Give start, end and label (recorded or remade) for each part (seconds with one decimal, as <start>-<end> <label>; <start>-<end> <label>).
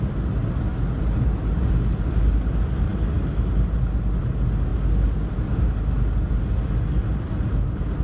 0.0-8.0 recorded